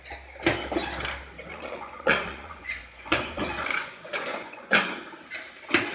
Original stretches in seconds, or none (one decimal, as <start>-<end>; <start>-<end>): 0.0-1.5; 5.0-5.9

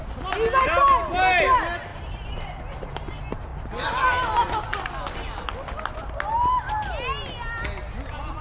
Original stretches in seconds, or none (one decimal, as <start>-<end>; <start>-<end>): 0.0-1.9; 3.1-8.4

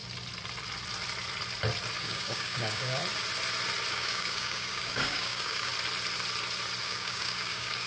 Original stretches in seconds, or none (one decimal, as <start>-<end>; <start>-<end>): 0.0-2.0; 3.0-3.9; 5.7-6.8

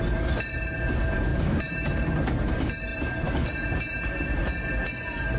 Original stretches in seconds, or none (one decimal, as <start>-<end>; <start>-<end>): 0.0-1.3; 2.0-5.4

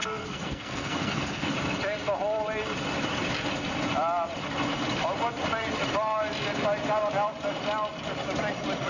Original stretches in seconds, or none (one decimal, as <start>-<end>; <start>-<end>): 1.5-8.9